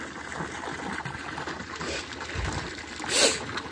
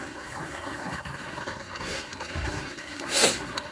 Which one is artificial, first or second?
second